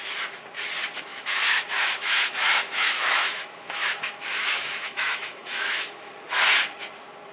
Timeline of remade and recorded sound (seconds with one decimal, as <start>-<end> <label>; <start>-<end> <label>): 0.0-1.1 recorded; 1.1-1.6 remade; 1.6-2.0 recorded; 2.0-6.1 remade; 6.1-7.3 recorded